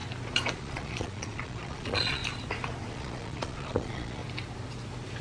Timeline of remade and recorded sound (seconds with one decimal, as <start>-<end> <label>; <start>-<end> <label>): 0.0-0.5 recorded; 0.5-2.2 remade; 2.2-2.9 recorded; 2.9-4.2 remade; 4.2-5.2 recorded

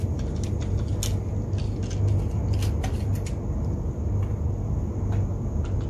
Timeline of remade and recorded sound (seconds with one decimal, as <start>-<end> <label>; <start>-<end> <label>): 0.0-5.9 recorded

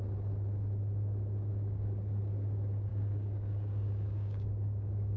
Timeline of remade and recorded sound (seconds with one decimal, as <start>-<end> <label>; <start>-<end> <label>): 0.0-1.5 recorded; 1.5-2.2 remade; 2.2-2.9 recorded; 2.9-5.2 remade

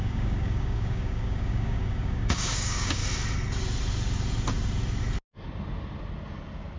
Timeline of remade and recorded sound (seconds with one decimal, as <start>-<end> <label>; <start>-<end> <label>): 0.0-3.0 remade; 3.0-6.8 recorded

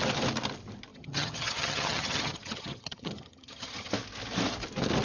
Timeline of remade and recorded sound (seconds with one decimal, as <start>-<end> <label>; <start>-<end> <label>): 0.0-0.9 recorded; 0.9-3.9 remade; 3.9-5.0 recorded

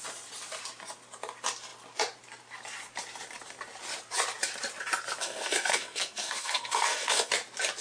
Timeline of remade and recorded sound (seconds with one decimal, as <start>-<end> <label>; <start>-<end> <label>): 0.0-5.2 recorded; 5.2-7.3 remade; 7.3-7.8 recorded

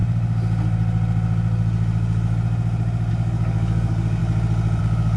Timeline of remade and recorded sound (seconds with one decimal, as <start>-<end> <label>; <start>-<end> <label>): 0.0-3.1 recorded; 3.1-4.2 remade; 4.2-4.8 recorded; 4.8-5.2 remade